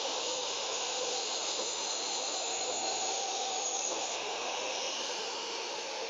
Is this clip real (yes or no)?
no